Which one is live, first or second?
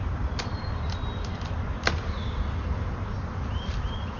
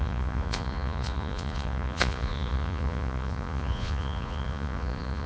first